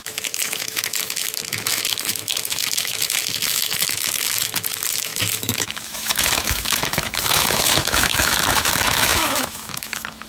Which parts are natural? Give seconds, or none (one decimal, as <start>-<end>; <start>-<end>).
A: none